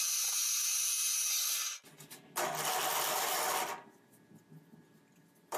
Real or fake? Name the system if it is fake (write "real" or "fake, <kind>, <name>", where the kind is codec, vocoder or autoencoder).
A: real